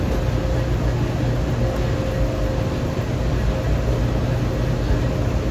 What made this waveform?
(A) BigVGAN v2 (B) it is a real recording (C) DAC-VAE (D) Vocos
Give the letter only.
B